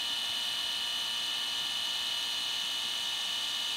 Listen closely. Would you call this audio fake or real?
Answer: real